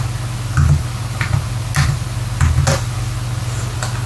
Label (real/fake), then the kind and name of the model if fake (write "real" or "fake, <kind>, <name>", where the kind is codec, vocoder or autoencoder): real